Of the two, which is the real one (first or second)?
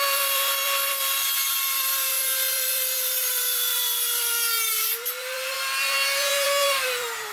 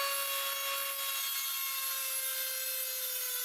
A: second